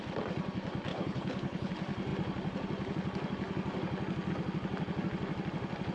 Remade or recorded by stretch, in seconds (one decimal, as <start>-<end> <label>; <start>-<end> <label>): 0.0-0.9 recorded; 0.9-1.7 remade; 1.7-5.9 recorded